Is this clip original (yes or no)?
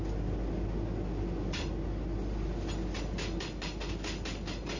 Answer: yes